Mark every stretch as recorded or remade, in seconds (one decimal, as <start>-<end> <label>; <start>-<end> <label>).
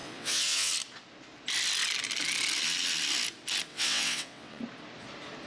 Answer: 0.0-0.7 remade; 0.7-3.7 recorded; 3.7-4.6 remade; 4.6-5.5 recorded